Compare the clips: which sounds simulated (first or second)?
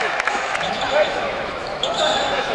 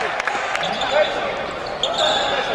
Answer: first